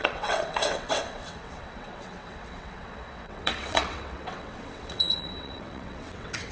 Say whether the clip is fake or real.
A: fake